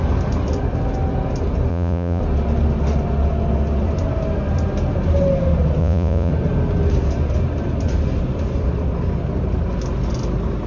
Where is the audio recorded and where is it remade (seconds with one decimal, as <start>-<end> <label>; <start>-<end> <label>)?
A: 0.0-1.7 recorded; 1.7-2.2 remade; 2.2-5.8 recorded; 5.8-6.3 remade; 6.3-10.7 recorded